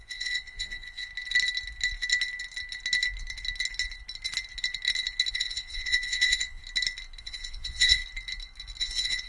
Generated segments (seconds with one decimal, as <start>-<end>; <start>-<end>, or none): 0.0-1.1; 5.3-6.6; 7.2-8.0; 8.8-9.3